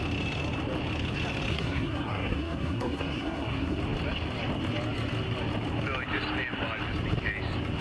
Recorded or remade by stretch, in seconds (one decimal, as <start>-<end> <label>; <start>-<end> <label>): 0.0-1.5 recorded; 1.5-3.8 remade; 3.8-7.8 recorded